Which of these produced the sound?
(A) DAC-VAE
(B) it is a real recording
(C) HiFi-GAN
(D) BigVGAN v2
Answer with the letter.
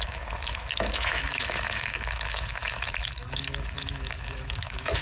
A